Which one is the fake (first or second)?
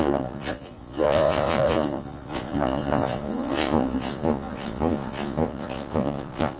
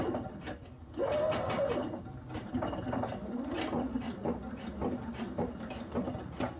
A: first